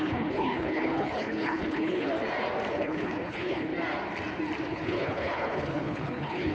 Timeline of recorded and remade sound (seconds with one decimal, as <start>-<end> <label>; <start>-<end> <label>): 0.0-2.1 remade; 2.1-2.7 recorded; 2.7-3.7 remade; 3.7-4.7 recorded; 4.7-6.5 remade